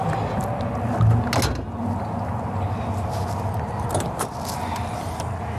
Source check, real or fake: real